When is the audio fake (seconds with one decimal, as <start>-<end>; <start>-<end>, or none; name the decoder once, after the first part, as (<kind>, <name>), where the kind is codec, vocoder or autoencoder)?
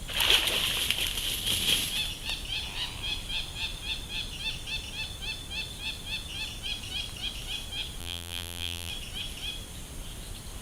8.0-8.9 (vocoder, BigVGAN v2)